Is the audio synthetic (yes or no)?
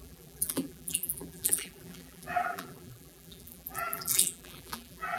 yes